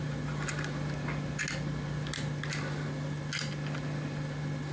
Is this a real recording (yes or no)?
yes